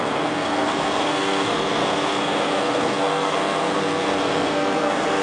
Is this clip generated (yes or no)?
yes